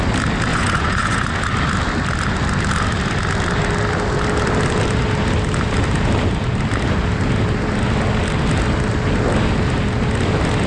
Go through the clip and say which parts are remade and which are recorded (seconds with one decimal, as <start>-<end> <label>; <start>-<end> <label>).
0.0-0.5 recorded; 0.5-1.4 remade; 1.4-10.7 recorded